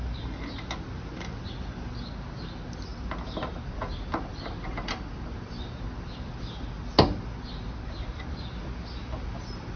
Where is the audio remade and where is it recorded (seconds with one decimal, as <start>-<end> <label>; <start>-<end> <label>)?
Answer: 0.0-2.9 recorded; 2.9-6.3 remade; 6.3-9.8 recorded